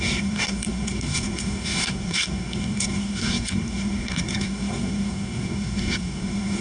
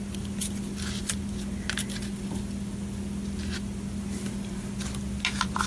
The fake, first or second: first